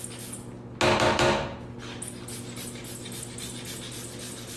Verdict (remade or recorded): recorded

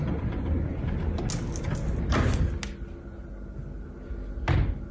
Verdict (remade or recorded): recorded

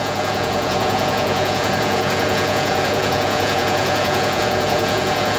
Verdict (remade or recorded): remade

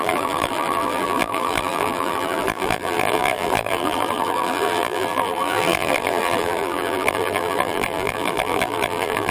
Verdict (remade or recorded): remade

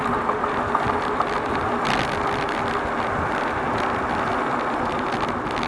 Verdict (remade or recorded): recorded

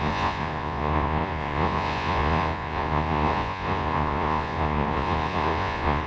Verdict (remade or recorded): remade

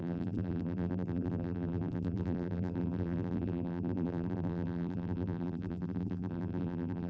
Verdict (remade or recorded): remade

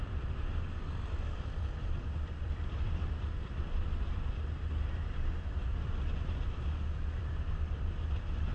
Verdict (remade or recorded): remade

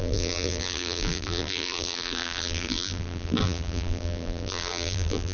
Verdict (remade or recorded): remade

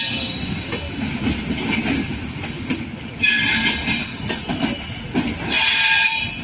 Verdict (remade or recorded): recorded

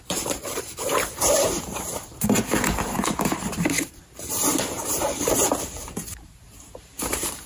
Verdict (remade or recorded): remade